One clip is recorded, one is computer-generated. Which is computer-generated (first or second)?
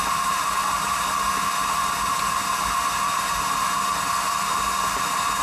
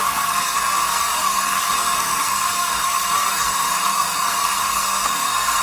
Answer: second